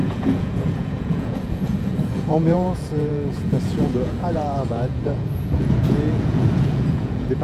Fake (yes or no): yes